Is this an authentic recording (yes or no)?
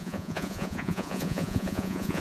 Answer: no